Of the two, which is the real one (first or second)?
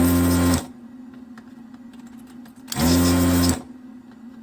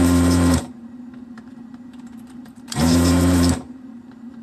first